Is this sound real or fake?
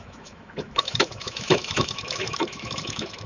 fake